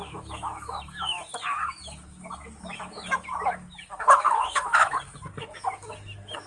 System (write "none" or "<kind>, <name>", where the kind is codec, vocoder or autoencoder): autoencoder, DAC-VAE